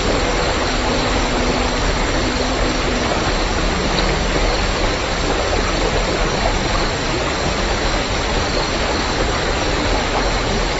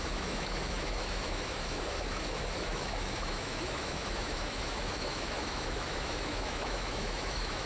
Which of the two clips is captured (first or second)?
first